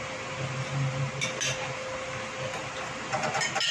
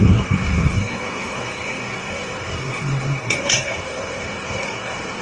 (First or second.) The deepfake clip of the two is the second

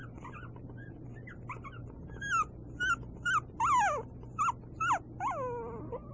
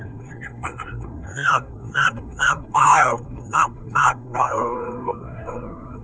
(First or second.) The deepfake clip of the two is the second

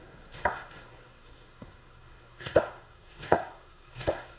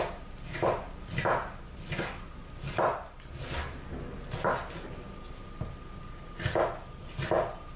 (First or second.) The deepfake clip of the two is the first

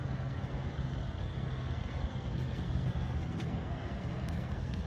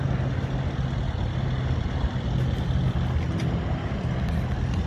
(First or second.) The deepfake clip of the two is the first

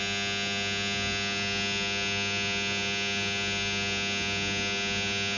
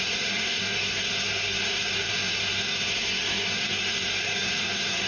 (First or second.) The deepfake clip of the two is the second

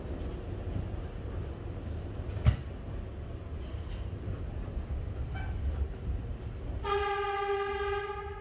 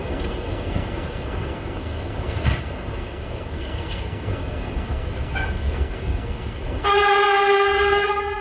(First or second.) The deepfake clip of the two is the second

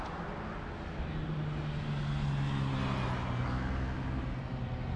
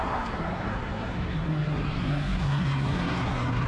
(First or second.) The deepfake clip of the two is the second